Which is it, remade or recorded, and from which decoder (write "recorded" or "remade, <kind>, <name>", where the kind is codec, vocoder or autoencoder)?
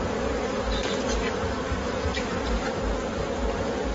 recorded